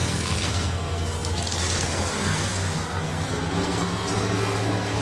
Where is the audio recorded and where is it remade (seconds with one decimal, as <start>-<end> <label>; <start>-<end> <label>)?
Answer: 0.0-5.0 remade